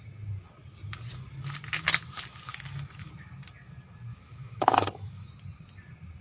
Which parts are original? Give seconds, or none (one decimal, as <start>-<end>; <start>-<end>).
0.0-2.5; 3.1-4.1; 5.3-6.2